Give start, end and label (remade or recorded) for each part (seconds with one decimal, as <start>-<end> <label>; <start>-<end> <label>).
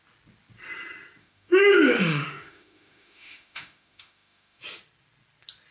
0.0-1.2 recorded; 1.2-4.6 remade; 4.6-5.7 recorded